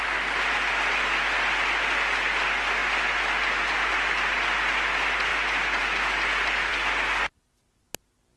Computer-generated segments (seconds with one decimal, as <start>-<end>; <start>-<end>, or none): none

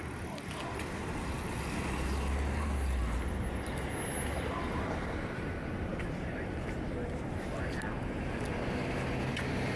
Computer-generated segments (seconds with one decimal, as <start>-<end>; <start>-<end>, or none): none

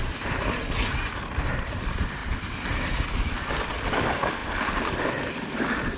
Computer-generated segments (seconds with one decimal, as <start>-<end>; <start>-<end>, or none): 0.0-6.0

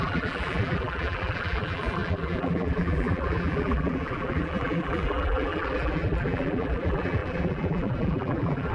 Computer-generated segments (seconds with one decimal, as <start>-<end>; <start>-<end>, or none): 0.0-8.7

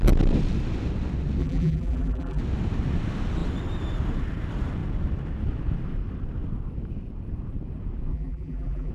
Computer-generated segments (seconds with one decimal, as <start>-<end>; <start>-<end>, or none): 1.4-2.4; 8.1-8.9

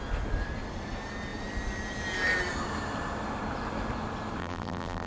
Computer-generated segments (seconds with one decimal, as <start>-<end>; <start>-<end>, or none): 4.4-5.1